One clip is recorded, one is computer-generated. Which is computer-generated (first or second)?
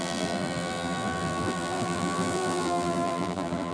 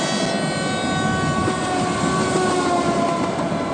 first